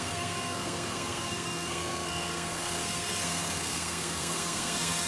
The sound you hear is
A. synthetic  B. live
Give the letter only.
A